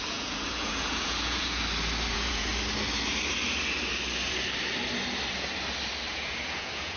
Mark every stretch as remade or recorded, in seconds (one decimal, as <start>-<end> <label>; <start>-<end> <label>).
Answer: 0.0-1.6 remade; 1.6-2.1 recorded; 2.1-2.5 remade; 2.5-6.1 recorded; 6.1-7.0 remade